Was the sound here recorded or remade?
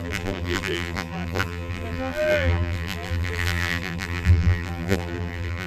remade